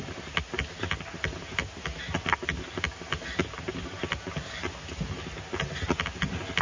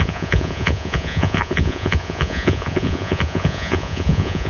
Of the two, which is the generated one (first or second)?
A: second